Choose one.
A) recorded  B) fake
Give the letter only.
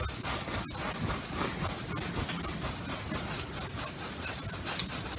A